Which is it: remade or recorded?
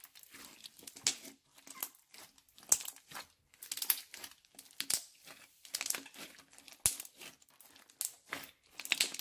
recorded